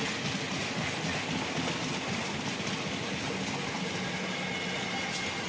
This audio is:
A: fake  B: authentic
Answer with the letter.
B